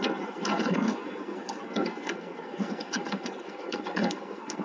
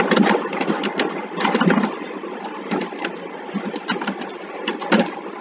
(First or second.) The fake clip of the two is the first